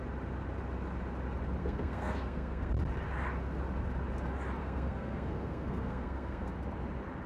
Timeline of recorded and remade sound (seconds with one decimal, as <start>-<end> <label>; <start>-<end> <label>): 0.0-1.6 recorded; 1.6-2.7 remade; 2.7-4.6 recorded; 4.6-6.5 remade; 6.5-7.3 recorded